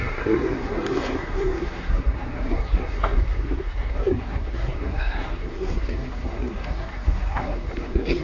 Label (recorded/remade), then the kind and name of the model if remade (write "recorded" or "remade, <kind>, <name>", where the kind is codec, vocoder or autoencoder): remade, codec, SNAC